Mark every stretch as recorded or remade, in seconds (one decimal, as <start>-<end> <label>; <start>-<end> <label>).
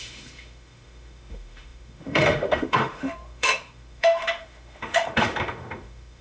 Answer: 0.0-6.2 remade